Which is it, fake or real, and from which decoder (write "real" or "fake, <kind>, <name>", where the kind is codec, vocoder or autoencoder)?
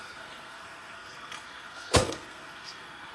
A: fake, codec, SNAC